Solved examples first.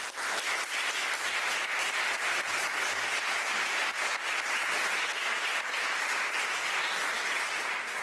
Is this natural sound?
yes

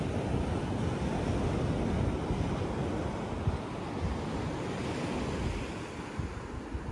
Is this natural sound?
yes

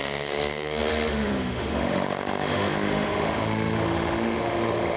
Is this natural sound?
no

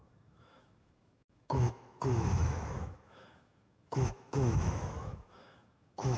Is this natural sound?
no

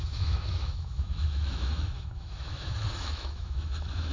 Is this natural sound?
no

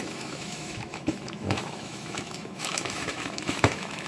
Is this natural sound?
no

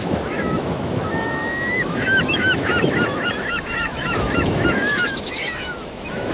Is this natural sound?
no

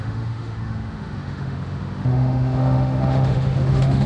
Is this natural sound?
no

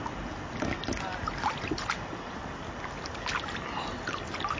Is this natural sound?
yes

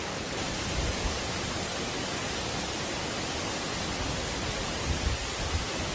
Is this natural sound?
yes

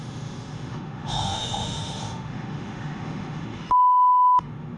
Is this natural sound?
no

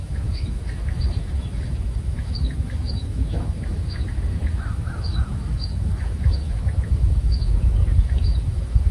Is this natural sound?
no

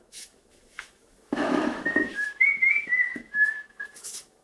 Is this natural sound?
no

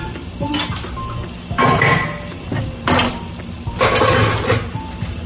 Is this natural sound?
yes